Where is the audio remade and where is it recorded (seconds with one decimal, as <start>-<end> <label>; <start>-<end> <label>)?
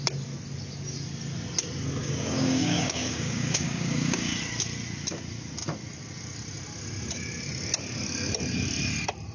0.0-2.0 recorded; 2.0-4.4 remade; 4.4-9.3 recorded